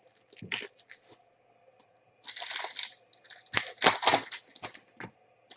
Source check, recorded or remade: recorded